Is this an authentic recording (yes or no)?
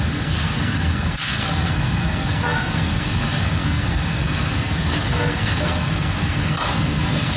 no